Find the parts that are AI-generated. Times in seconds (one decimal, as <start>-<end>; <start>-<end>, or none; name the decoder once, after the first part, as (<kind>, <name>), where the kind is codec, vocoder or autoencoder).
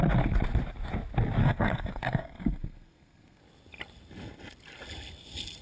1.4-3.4 (codec, SNAC)